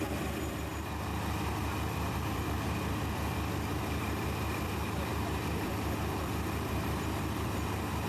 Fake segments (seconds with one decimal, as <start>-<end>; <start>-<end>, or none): 0.0-0.7; 1.5-8.1